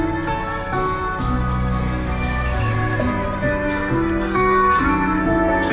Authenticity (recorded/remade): recorded